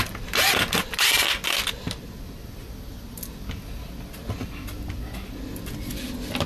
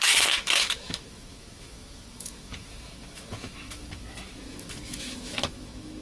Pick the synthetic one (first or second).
second